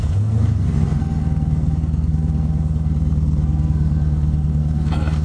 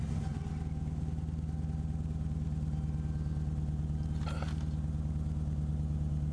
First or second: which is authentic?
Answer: second